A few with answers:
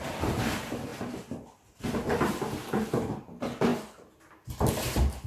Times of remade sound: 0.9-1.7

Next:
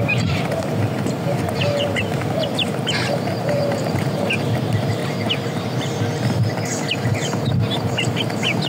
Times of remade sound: 0.0-5.0; 7.5-8.7

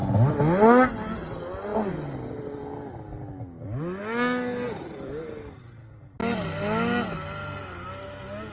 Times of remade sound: none

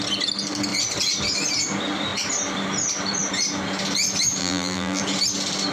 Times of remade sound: 4.4-5.0

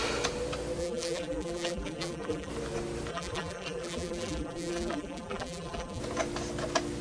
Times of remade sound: 0.8-2.5; 3.1-6.0